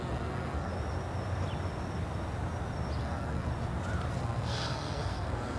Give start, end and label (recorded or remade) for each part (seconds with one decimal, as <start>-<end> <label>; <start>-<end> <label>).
0.0-0.7 remade; 0.7-3.0 recorded; 3.0-3.5 remade; 3.5-4.1 recorded; 4.1-5.6 remade